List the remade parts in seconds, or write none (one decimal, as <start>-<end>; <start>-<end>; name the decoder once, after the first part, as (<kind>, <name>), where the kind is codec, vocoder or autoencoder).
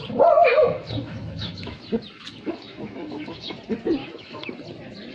0.5-1.8 (autoencoder, DAC-VAE); 2.3-3.5; 4.0-4.5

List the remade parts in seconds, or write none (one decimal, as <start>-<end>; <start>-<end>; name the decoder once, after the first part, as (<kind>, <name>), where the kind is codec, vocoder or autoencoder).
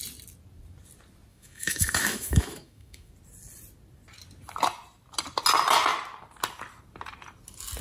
1.3-3.1 (autoencoder, DAC-VAE)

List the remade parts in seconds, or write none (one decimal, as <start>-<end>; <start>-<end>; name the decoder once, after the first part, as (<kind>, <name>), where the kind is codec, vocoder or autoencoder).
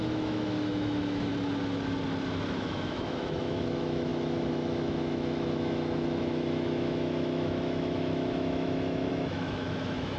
0.0-1.3 (autoencoder, DAC-VAE); 2.5-10.2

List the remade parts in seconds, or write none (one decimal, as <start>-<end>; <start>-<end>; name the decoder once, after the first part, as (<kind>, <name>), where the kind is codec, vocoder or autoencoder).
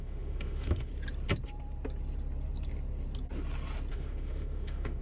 0.0-0.9 (autoencoder, DAC-VAE); 3.9-5.0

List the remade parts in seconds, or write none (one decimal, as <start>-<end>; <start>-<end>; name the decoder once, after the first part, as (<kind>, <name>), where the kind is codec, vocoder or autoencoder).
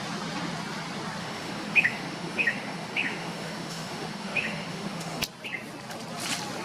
1.2-5.2 (autoencoder, DAC-VAE)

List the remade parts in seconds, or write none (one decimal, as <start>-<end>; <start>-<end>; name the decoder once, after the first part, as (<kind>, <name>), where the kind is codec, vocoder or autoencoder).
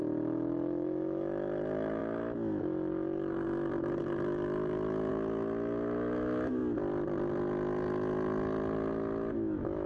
0.0-6.6 (autoencoder, DAC-VAE); 8.9-9.9